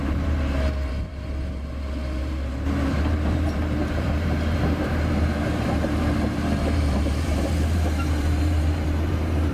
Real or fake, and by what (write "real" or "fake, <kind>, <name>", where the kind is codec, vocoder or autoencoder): fake, vocoder, BigVGAN v2